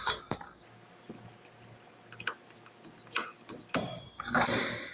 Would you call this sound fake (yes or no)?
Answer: no